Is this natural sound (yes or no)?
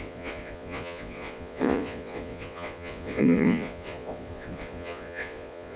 no